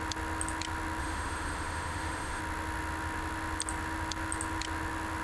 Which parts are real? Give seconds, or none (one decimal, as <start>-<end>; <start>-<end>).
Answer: 0.0-1.0; 2.4-5.2